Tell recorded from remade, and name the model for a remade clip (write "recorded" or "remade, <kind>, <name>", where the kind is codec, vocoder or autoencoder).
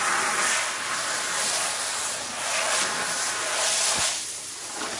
recorded